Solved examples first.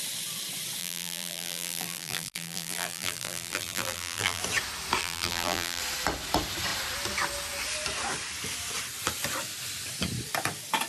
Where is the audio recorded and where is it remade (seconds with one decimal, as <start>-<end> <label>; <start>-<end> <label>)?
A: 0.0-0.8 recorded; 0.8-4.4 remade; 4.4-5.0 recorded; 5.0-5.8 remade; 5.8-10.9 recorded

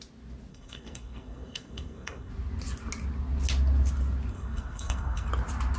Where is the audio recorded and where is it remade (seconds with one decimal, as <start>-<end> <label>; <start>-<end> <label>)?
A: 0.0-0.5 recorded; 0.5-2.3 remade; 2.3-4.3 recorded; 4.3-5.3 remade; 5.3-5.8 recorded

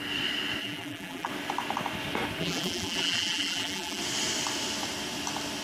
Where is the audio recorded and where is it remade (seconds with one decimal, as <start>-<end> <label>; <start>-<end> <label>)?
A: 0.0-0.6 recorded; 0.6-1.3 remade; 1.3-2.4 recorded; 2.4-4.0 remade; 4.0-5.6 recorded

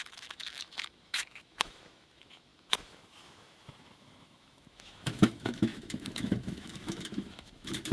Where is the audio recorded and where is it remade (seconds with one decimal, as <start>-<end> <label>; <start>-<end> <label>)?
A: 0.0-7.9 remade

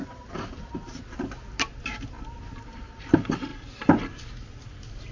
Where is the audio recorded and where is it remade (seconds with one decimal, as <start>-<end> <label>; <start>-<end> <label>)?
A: 0.0-5.1 recorded

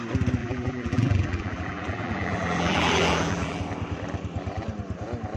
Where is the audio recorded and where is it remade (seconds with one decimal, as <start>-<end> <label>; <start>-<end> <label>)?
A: 0.0-0.4 recorded; 0.4-3.6 remade; 3.6-5.4 recorded

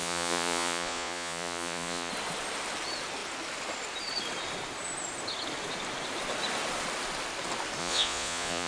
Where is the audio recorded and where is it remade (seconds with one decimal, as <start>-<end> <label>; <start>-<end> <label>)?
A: 0.0-2.1 remade; 2.1-7.8 recorded; 7.8-8.7 remade

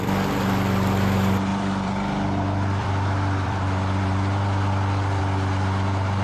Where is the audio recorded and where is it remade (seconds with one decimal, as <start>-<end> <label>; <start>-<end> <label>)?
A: 0.0-1.5 recorded; 1.5-5.2 remade; 5.2-6.2 recorded